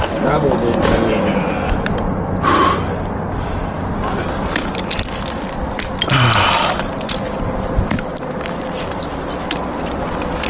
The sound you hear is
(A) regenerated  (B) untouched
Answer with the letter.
B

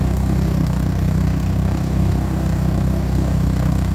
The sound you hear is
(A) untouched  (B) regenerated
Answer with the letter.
B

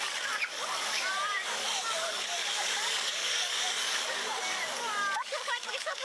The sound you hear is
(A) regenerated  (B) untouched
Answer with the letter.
A